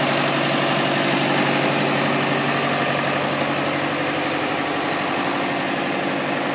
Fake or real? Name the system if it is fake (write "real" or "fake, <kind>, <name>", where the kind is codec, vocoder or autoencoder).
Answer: real